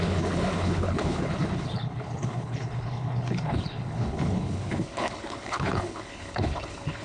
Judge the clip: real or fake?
fake